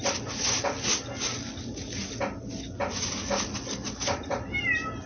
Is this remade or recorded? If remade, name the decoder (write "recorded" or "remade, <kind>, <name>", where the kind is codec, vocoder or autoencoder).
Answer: recorded